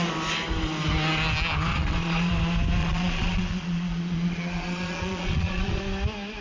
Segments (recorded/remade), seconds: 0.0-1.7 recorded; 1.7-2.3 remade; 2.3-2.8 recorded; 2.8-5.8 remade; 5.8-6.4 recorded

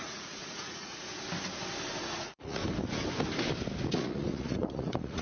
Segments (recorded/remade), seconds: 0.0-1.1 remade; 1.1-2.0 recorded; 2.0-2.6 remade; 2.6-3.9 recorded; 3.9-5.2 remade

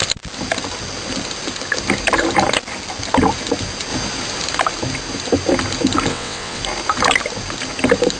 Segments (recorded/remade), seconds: 0.0-6.1 recorded; 6.1-6.6 remade; 6.6-8.2 recorded

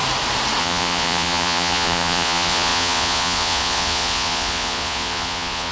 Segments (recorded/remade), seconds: 0.0-0.6 recorded; 0.6-5.7 remade

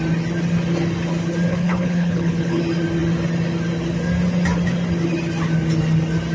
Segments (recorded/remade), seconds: 0.0-1.5 recorded; 1.5-2.6 remade; 2.6-6.3 recorded

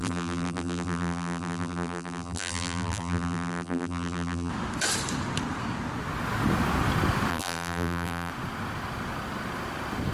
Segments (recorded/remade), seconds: 0.0-4.5 remade; 4.5-7.3 recorded; 7.3-8.3 remade; 8.3-10.1 recorded

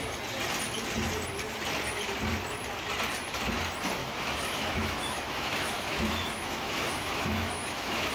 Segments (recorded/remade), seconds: 0.0-4.0 recorded; 4.0-8.1 remade

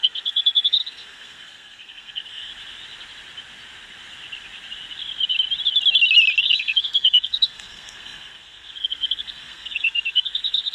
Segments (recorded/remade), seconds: 0.0-2.5 remade; 2.5-6.4 recorded; 6.4-10.7 remade